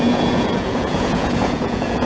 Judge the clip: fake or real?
fake